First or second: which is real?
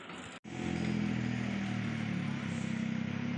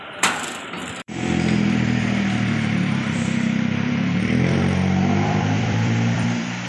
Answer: first